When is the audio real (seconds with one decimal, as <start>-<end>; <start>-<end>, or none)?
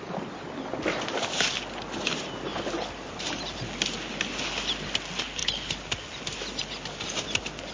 0.0-7.7